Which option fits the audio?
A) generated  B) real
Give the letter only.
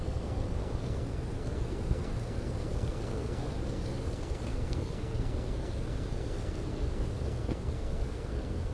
A